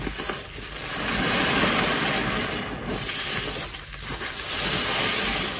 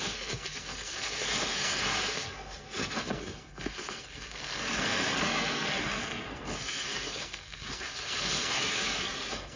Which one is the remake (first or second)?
second